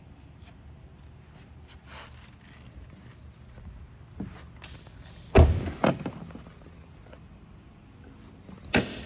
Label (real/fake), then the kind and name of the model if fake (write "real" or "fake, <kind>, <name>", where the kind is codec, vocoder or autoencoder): real